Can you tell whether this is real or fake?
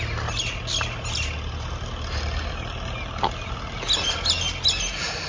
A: real